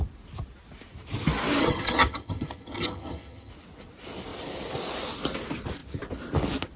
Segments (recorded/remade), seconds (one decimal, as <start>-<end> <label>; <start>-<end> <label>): 0.0-1.6 recorded; 1.6-3.5 remade; 3.5-6.8 recorded